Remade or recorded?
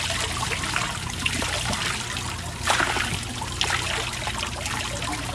recorded